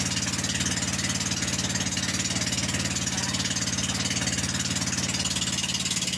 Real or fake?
real